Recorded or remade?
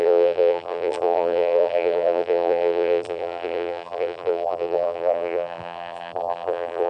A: remade